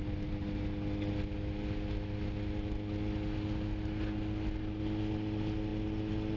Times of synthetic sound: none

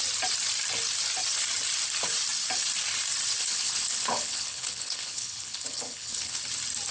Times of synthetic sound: 3.4-6.4 (codec, HILCodec)

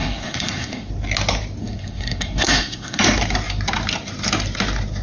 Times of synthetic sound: 0.0-0.9 (codec, SNAC); 1.6-3.0

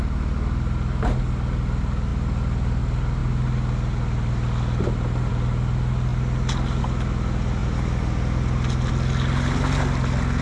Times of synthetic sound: none